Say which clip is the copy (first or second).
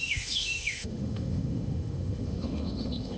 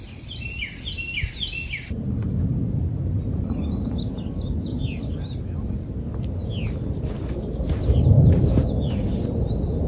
first